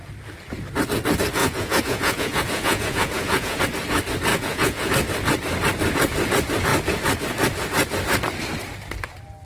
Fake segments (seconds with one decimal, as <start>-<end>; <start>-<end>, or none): 1.4-3.6; 4.3-4.9